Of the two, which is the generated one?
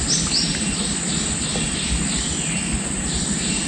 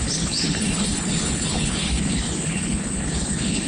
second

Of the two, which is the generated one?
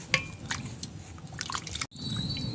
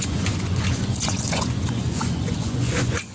second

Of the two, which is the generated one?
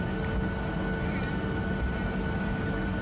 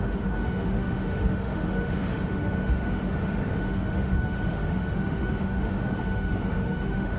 second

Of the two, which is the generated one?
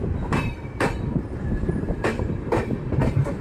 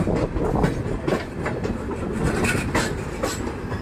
first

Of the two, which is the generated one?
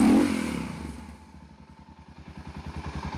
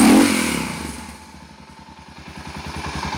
first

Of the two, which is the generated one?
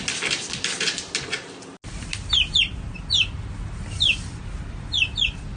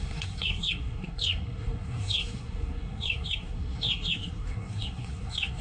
second